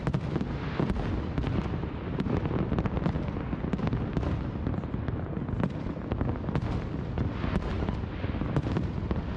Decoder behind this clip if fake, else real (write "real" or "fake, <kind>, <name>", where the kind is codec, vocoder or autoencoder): real